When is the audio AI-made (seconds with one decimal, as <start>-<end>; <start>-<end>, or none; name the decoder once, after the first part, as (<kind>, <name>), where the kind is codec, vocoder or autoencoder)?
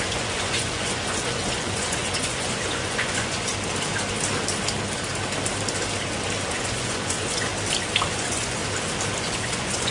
0.0-3.5 (vocoder, Vocos); 6.5-7.5; 8.1-8.6; 9.2-9.9